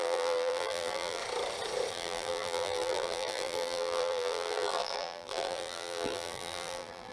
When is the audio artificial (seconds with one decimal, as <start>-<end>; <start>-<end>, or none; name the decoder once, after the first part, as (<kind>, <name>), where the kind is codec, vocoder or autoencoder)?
0.0-1.2 (vocoder, BigVGAN v2); 1.9-7.1